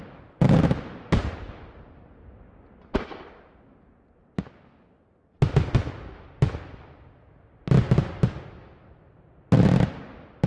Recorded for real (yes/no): yes